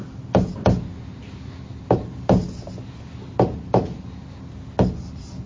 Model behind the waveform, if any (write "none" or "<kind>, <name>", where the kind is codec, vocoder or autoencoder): none